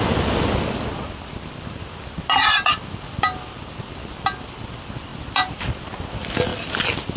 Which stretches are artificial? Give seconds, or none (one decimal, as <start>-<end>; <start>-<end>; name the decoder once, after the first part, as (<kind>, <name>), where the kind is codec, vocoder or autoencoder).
none